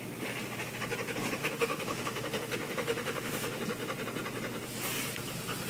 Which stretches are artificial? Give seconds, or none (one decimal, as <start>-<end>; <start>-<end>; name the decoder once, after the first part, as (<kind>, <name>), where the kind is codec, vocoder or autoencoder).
1.4-3.6 (autoencoder, DAC-VAE)